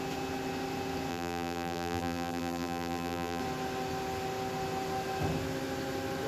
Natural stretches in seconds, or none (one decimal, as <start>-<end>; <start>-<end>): 0.0-1.1; 3.4-6.3

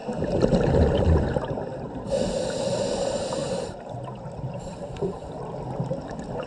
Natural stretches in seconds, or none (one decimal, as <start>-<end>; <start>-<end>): 0.0-3.4; 5.4-6.5